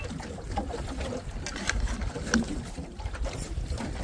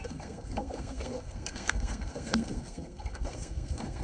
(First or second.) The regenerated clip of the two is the second